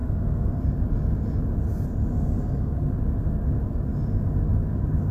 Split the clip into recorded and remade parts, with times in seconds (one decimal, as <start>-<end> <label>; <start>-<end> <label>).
0.0-0.6 remade; 0.6-2.1 recorded; 2.1-2.9 remade; 2.9-5.1 recorded